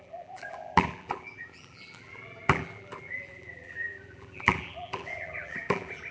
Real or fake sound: fake